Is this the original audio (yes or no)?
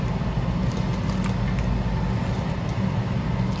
yes